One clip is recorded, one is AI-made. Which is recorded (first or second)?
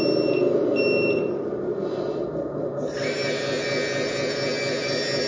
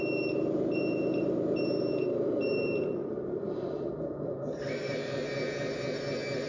first